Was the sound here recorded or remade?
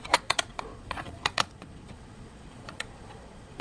remade